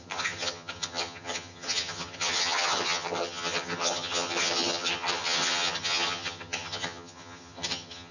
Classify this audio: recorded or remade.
remade